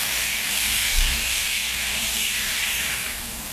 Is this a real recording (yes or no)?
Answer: no